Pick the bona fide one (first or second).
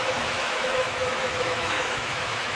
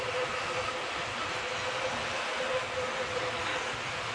second